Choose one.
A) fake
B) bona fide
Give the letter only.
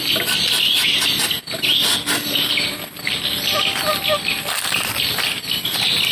B